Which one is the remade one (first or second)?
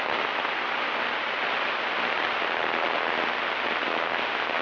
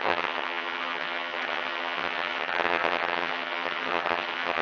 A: second